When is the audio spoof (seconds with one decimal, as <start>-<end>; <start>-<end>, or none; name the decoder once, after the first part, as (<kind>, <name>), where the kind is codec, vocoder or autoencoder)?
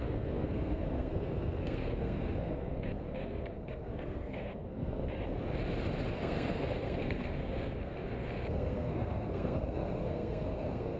0.0-5.0 (codec, SNAC); 6.1-11.0